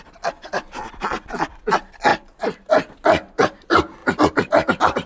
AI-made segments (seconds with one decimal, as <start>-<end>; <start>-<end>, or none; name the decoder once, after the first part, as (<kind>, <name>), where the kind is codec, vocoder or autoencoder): 2.1-2.7 (vocoder, BigVGAN v2); 4.0-5.1